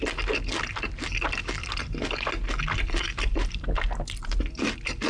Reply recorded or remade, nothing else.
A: recorded